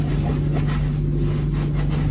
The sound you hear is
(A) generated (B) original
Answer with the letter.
B